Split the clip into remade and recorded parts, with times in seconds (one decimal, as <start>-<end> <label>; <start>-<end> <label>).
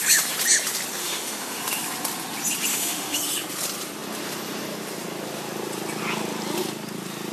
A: 0.0-1.0 recorded; 1.0-1.6 remade; 1.6-2.7 recorded; 2.7-3.2 remade; 3.2-7.3 recorded